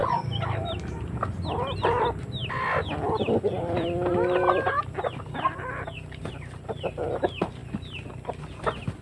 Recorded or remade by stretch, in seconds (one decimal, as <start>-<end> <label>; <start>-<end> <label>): 0.0-1.2 remade; 1.2-9.0 recorded